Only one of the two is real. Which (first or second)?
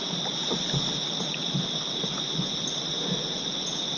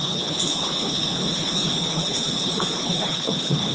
first